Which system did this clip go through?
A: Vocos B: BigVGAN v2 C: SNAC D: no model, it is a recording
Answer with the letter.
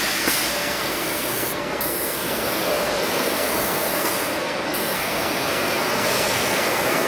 C